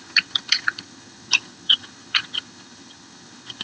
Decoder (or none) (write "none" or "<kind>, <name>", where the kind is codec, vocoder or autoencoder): vocoder, HiFi-GAN